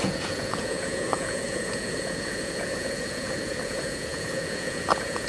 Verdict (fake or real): fake